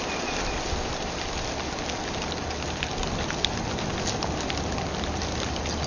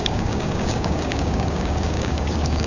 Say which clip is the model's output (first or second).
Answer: second